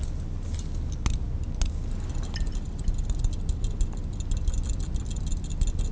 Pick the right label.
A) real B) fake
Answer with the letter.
A